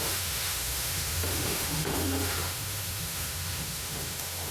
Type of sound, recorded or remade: remade